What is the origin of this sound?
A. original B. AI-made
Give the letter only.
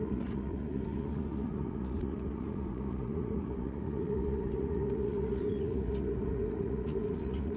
B